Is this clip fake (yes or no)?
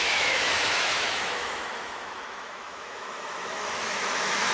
yes